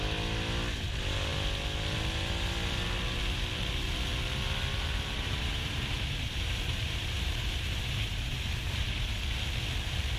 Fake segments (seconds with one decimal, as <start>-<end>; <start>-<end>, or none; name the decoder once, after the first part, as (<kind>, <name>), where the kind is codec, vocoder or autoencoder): 4.7-9.1 (vocoder, BigVGAN v2)